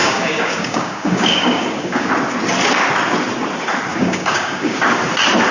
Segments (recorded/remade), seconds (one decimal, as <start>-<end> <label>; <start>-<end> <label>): 0.0-2.1 remade; 2.1-3.9 recorded; 3.9-4.8 remade; 4.8-5.5 recorded